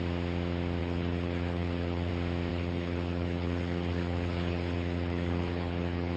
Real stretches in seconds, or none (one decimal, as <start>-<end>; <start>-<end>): 0.0-0.8; 2.1-2.5